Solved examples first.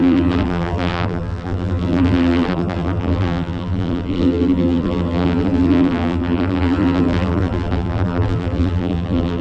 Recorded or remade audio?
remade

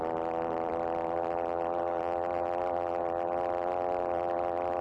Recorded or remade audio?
remade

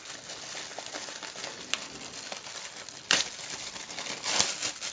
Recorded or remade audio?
recorded